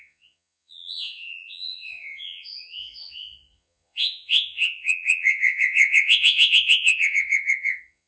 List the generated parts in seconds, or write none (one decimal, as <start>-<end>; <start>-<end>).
0.0-8.1